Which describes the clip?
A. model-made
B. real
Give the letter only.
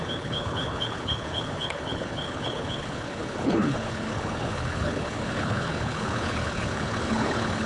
A